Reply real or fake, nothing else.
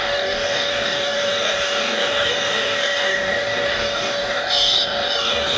fake